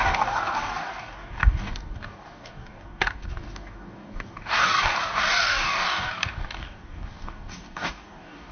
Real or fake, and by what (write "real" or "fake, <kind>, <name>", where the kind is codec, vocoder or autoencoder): fake, codec, DAC